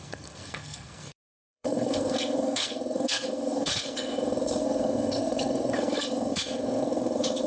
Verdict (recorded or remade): remade